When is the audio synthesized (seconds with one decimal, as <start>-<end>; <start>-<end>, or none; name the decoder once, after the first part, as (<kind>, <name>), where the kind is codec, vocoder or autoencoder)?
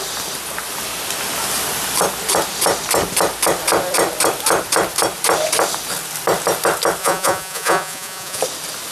7.0-8.4 (vocoder, Vocos)